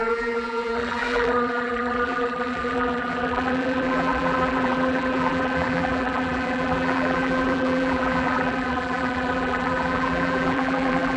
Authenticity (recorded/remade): remade